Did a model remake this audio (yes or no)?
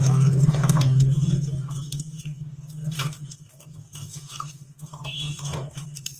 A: yes